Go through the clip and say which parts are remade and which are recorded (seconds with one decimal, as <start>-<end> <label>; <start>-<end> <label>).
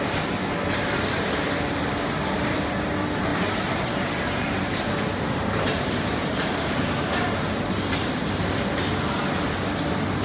0.0-3.3 recorded; 3.3-4.6 remade; 4.6-5.4 recorded; 5.4-8.3 remade; 8.3-10.2 recorded